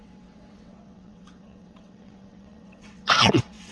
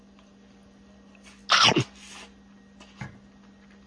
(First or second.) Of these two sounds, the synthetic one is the first